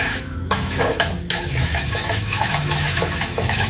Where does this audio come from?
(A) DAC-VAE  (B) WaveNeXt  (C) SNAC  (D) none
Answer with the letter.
A